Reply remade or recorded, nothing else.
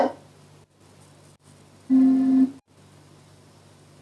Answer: recorded